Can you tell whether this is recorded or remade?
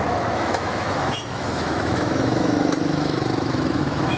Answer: remade